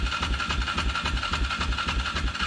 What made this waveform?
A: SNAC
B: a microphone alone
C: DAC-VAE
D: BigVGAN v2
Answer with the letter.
B